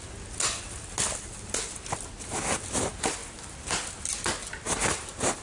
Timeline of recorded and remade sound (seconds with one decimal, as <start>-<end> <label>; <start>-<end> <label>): 0.0-3.2 recorded; 3.2-3.9 remade; 3.9-5.4 recorded